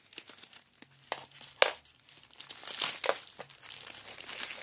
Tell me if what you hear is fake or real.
real